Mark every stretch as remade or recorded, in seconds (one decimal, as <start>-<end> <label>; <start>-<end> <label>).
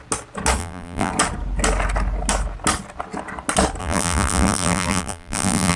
0.0-0.6 recorded; 0.6-1.1 remade; 1.1-3.8 recorded; 3.8-5.8 remade